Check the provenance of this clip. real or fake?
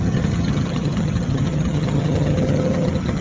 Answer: fake